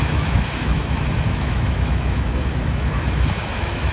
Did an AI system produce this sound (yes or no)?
yes